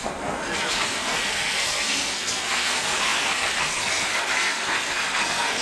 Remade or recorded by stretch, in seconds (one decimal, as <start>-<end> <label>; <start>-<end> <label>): 0.0-5.6 remade